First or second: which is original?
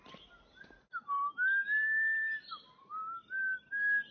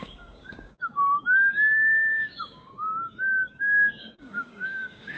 first